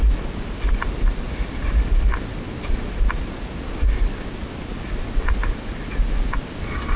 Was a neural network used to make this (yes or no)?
no